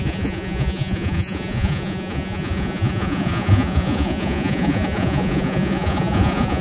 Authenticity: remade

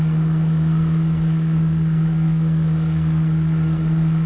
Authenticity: remade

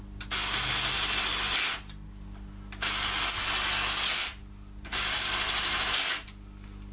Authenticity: recorded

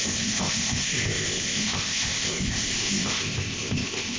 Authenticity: remade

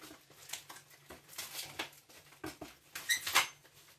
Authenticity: recorded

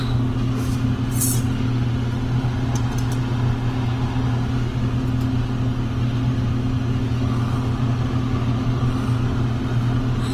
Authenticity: recorded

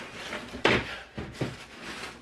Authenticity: recorded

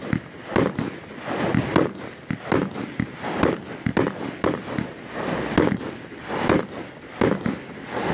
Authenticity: recorded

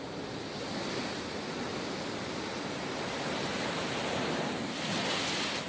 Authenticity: recorded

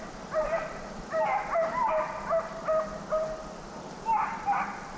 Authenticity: recorded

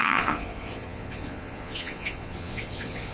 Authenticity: remade